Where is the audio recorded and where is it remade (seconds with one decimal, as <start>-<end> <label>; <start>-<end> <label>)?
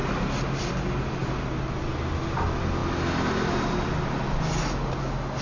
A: 0.0-5.4 recorded